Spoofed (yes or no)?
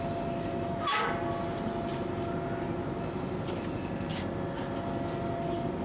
no